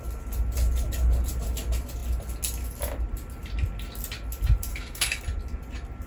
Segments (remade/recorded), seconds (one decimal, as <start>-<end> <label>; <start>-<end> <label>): 0.0-4.7 recorded; 4.7-5.2 remade; 5.2-6.1 recorded